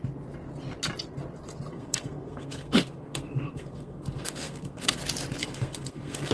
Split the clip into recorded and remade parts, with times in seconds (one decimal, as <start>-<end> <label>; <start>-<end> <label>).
0.0-1.7 recorded; 1.7-5.0 remade; 5.0-5.4 recorded; 5.4-6.3 remade